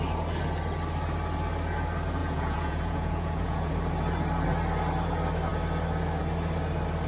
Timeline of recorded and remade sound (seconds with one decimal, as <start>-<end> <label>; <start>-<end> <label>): 0.0-2.2 recorded; 2.2-3.7 remade; 3.7-7.1 recorded